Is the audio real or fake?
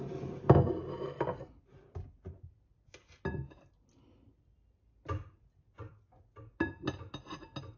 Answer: real